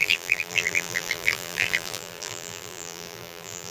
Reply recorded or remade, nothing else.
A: remade